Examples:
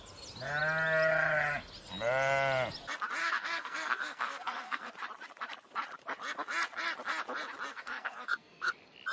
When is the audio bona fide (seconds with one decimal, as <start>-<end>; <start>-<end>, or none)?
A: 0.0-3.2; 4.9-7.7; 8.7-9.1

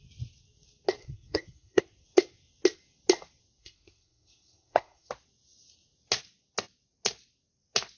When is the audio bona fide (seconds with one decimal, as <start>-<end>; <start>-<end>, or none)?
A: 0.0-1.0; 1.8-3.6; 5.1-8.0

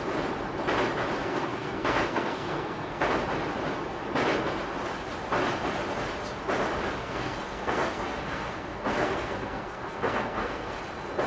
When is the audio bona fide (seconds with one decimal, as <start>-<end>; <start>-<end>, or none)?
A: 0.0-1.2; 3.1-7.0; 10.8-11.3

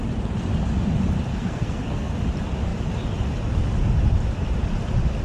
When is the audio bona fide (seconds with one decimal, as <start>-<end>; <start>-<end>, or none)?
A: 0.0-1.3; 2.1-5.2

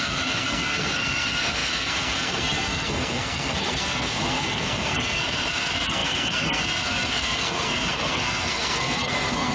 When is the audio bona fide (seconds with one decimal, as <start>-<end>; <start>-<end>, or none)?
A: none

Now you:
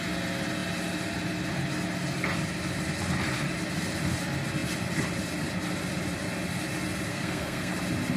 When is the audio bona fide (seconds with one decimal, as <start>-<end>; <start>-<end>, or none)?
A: 0.0-7.1; 7.7-8.2

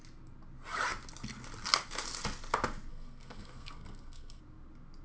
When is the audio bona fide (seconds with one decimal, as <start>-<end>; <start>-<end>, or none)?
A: 0.0-2.9; 4.4-5.0

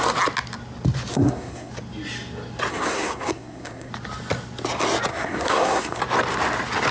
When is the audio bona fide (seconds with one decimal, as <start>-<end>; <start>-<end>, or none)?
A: 0.0-1.1; 1.7-2.7; 3.9-5.1; 6.0-6.9